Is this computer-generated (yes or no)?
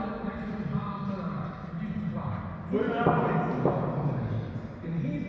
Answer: no